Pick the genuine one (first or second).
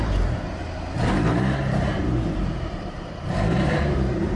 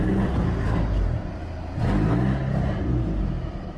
second